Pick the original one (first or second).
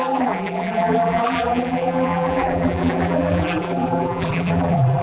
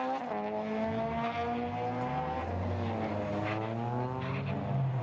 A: second